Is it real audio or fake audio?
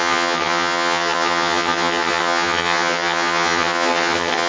fake